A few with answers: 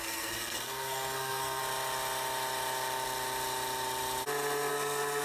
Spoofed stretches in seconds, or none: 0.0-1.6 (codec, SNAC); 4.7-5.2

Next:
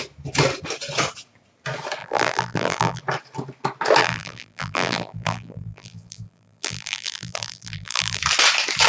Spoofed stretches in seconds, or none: 2.0-3.0 (vocoder, BigVGAN v2); 4.0-8.2